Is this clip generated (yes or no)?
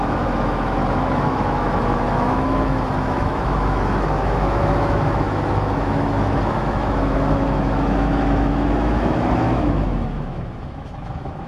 yes